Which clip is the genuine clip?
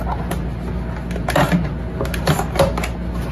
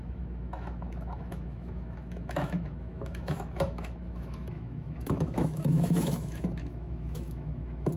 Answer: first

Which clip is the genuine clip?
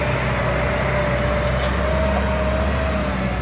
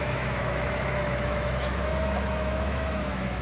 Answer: first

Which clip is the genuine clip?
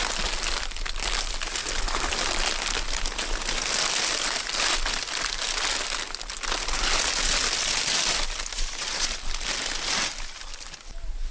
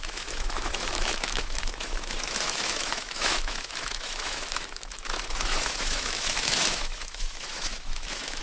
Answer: first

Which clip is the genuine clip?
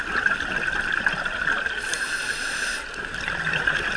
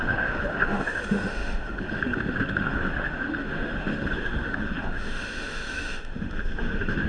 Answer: first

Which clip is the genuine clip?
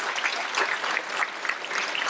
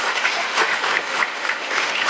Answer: first